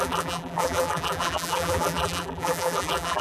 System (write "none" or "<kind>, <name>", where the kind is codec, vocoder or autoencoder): vocoder, BigVGAN v2